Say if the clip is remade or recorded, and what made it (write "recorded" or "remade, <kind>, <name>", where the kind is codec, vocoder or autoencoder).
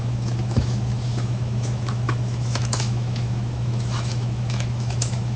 remade, autoencoder, DAC-VAE